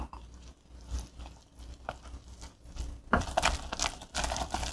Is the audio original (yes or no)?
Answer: yes